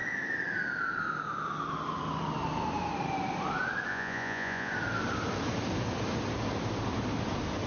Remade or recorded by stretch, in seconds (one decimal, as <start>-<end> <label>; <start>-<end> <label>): 0.0-3.9 recorded; 3.9-4.7 remade; 4.7-7.7 recorded